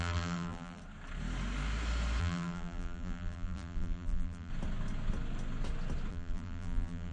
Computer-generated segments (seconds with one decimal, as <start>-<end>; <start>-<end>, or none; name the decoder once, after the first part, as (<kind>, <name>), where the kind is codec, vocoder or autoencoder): 0.0-0.8 (vocoder, BigVGAN v2); 2.2-4.5; 6.1-7.1